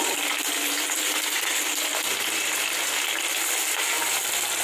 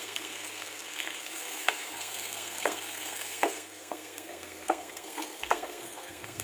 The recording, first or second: first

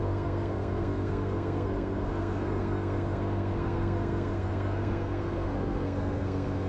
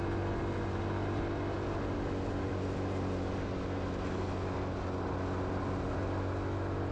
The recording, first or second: second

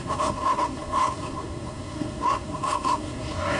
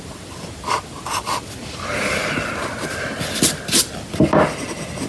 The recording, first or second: second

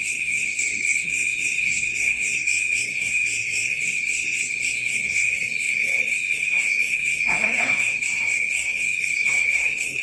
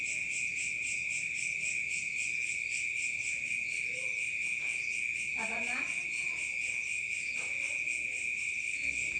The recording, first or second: second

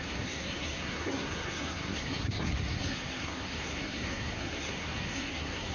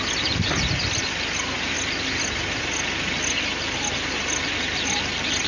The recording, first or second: second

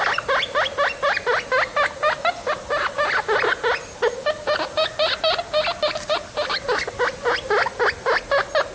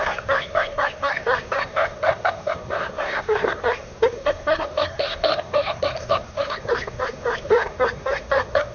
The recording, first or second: first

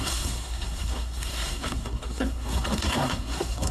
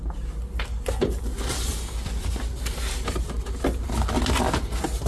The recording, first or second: second